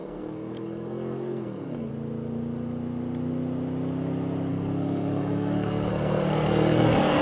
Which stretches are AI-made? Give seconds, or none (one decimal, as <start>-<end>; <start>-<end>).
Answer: 0.0-1.9; 4.5-7.2